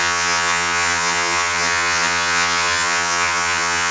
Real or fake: fake